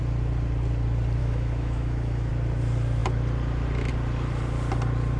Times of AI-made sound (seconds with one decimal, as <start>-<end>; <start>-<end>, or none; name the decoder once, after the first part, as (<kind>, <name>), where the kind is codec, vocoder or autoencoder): 1.2-2.3 (autoencoder, DAC-VAE)